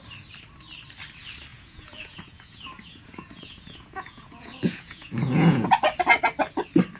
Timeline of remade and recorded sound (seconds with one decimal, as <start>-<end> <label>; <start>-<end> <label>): 0.0-1.5 recorded; 1.5-5.7 remade; 5.7-7.0 recorded